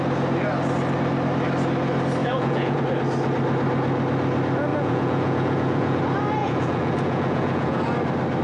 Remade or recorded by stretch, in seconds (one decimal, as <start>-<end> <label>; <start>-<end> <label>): 0.0-2.2 recorded; 2.2-2.8 remade; 2.8-4.7 recorded; 4.7-6.0 remade; 6.0-6.4 recorded; 6.4-7.9 remade; 7.9-8.4 recorded